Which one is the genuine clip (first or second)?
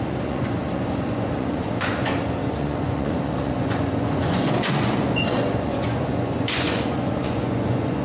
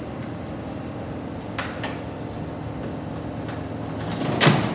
second